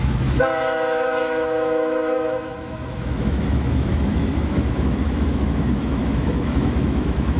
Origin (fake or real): fake